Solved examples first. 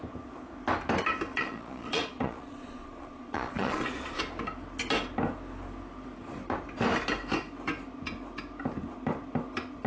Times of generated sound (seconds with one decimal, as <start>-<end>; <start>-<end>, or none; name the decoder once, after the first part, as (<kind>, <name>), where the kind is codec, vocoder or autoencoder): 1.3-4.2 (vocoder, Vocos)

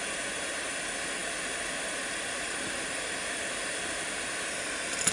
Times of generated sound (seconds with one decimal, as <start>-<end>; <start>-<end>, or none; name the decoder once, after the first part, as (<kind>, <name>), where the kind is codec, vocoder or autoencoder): none

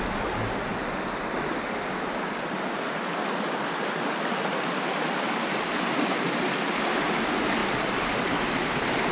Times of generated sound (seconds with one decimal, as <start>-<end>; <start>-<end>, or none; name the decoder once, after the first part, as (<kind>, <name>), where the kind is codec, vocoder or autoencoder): none

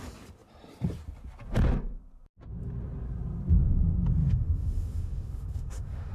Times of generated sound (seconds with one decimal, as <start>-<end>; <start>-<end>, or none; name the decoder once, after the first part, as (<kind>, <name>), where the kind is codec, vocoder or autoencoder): 4.2-6.1 (autoencoder, DAC-VAE)